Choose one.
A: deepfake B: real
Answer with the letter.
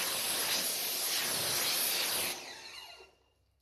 B